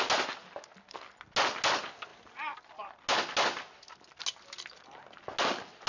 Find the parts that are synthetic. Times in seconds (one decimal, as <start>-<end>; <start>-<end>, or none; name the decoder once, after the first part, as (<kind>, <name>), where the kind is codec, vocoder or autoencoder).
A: none